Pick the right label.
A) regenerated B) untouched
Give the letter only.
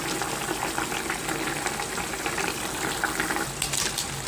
B